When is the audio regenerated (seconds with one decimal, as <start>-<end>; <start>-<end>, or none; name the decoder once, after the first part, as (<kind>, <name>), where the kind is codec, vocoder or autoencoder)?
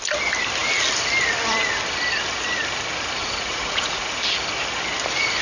3.2-4.2 (vocoder, Vocos)